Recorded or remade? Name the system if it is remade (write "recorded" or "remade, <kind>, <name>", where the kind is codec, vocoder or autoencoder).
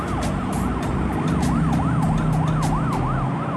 recorded